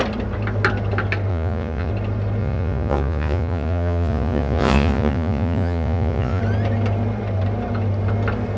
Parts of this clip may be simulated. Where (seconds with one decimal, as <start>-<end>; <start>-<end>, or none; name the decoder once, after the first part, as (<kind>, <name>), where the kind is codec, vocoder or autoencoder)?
1.3-1.9 (vocoder, Vocos); 2.4-6.4